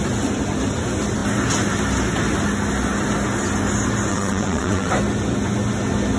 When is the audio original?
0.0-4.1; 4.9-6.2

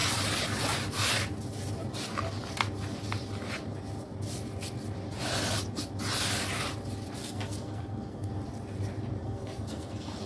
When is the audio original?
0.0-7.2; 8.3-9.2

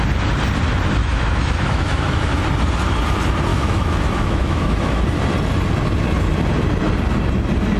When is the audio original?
0.0-1.0; 2.3-3.5; 5.0-7.8

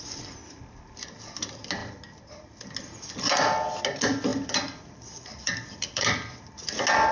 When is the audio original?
0.0-4.3; 6.4-7.1

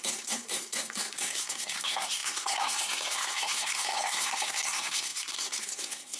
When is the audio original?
none

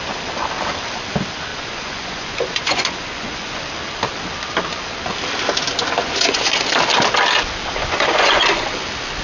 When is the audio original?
0.0-1.5; 3.6-6.0; 6.6-7.8; 8.6-9.2